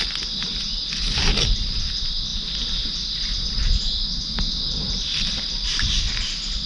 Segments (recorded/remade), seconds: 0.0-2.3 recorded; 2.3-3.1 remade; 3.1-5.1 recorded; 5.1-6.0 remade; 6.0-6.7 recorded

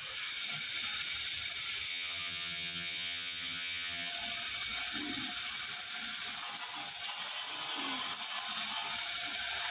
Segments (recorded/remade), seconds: 0.0-1.9 recorded; 1.9-4.1 remade; 4.1-9.7 recorded

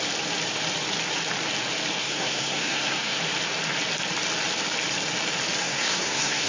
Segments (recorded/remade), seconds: 0.0-2.0 recorded; 2.0-3.2 remade; 3.2-5.6 recorded; 5.6-6.5 remade

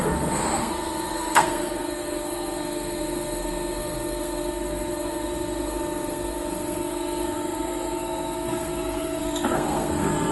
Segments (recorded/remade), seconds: 0.0-10.3 remade

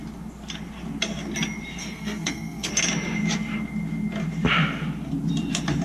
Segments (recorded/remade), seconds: 0.0-1.8 recorded; 1.8-2.7 remade; 2.7-5.8 recorded

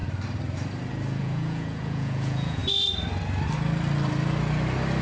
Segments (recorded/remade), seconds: 0.0-1.2 recorded; 1.2-2.6 remade; 2.6-5.0 recorded

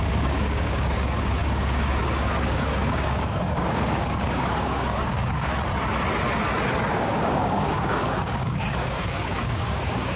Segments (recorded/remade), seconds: 0.0-5.5 remade; 5.5-6.9 recorded; 6.9-10.2 remade